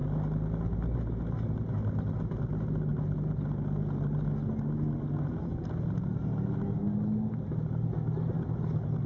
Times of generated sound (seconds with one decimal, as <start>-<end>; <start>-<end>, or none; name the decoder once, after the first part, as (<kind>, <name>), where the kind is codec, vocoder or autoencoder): none

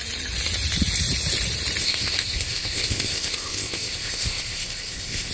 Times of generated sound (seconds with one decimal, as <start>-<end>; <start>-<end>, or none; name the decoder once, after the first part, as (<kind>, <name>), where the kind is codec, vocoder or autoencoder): 1.8-5.3 (codec, ZipCodec)

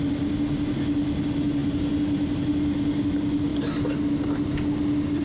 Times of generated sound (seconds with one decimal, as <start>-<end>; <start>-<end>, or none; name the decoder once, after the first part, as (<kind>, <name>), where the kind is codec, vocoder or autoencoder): none

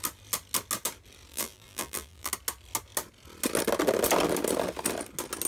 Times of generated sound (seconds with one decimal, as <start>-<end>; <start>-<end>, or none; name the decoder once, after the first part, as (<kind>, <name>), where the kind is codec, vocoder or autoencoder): 1.3-2.3 (vocoder, BigVGAN v2)

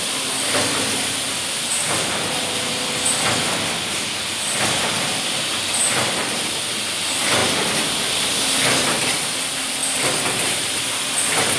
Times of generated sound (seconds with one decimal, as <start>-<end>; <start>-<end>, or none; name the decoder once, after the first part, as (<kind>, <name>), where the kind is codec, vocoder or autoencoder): 7.4-7.9 (vocoder, BigVGAN v2); 9.8-10.7